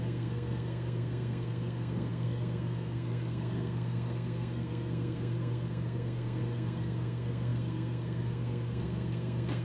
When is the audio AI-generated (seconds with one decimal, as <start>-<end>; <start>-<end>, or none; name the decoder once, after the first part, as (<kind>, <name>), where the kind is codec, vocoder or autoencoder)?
0.0-9.6 (codec, SNAC)